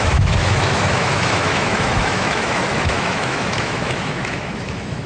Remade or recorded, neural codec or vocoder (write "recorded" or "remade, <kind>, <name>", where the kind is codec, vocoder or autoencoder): remade, autoencoder, DAC-VAE